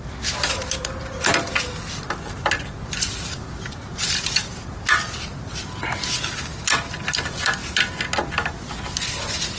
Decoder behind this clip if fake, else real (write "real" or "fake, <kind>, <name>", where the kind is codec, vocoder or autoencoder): real